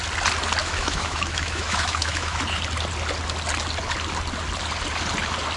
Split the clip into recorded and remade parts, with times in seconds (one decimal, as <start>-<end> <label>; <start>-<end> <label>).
0.0-0.6 recorded; 0.6-2.4 remade; 2.4-5.6 recorded